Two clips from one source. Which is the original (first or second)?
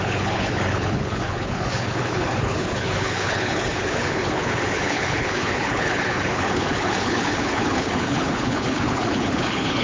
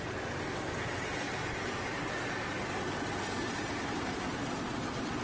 second